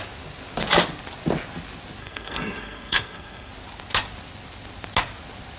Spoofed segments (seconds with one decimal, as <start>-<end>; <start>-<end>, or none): 2.0-3.5